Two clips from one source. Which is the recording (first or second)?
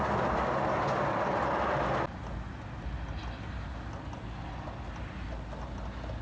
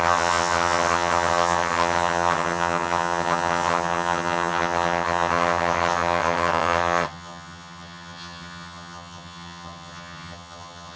first